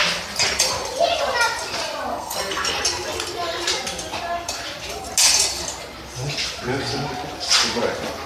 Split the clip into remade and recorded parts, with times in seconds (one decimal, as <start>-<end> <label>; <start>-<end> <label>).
0.0-2.1 recorded; 2.1-2.8 remade; 2.8-8.3 recorded